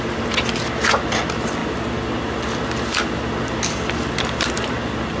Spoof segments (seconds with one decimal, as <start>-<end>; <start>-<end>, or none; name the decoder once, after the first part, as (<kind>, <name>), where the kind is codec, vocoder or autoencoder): none

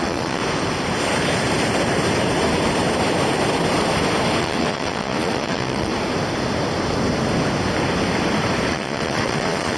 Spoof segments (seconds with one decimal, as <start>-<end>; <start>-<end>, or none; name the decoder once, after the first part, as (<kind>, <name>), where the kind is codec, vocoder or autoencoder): 0.0-0.4 (vocoder, Vocos); 4.4-5.9; 8.7-9.8

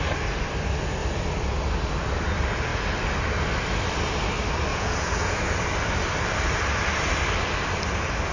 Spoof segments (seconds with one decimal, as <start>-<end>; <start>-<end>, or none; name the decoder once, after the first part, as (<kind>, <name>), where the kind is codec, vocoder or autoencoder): 4.7-5.4 (vocoder, Vocos)

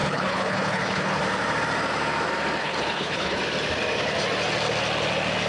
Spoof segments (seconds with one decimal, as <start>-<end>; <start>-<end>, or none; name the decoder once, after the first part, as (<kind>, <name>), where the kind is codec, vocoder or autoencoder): 0.0-1.2 (codec, HILCodec); 2.6-3.4

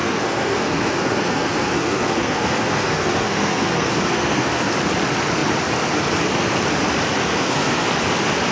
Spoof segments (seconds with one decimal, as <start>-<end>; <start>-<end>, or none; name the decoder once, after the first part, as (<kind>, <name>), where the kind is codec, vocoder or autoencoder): 0.0-4.7 (codec, SNAC); 7.2-7.9

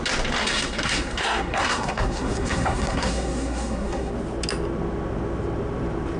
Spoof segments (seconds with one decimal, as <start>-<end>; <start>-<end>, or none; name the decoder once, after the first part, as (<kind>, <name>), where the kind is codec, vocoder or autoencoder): 0.4-4.1 (codec, SNAC)

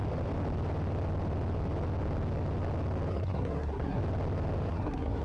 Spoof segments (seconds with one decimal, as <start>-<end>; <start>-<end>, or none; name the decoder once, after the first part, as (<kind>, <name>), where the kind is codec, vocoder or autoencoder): 3.1-4.0 (codec, SNAC); 4.7-5.2